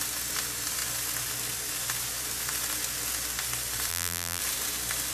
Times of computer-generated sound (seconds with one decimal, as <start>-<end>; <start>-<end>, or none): 3.9-4.4